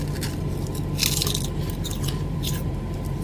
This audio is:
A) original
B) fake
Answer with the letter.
A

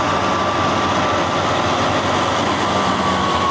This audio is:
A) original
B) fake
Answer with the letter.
A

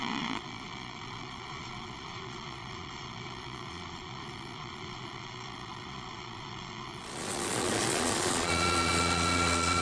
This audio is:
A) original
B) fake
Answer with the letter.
B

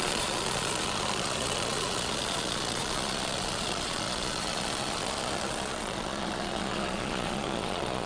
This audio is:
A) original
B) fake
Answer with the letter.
B